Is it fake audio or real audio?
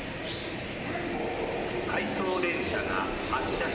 real